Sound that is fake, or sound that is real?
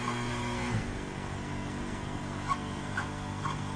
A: fake